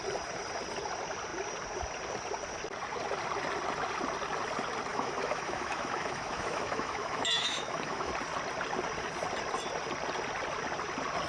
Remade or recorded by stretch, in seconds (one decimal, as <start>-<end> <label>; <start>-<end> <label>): 0.0-4.9 recorded; 4.9-8.1 remade; 8.1-11.3 recorded